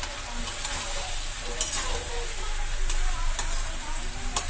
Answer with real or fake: real